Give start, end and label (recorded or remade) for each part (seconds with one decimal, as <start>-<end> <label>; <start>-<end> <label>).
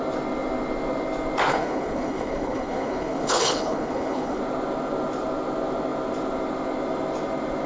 0.0-1.5 recorded; 1.5-4.4 remade; 4.4-7.7 recorded